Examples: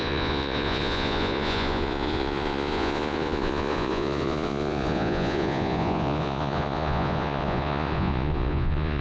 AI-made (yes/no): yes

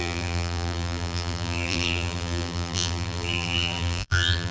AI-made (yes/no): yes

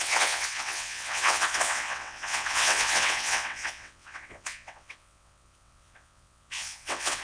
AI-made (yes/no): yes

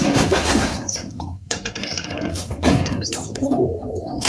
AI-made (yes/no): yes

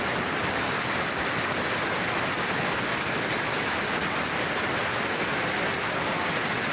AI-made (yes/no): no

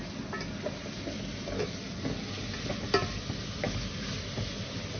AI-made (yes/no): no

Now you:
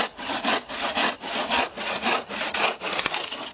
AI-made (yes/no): yes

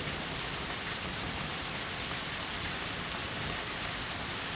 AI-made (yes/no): yes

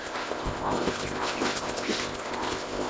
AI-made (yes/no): yes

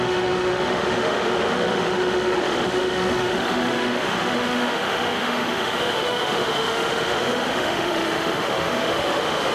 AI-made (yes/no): yes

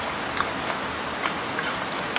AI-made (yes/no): no